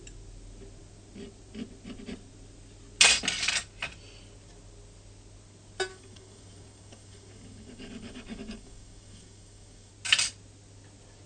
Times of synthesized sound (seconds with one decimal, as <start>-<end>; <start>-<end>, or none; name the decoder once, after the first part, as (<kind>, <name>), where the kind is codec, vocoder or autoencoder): 5.9-9.9 (codec, DAC)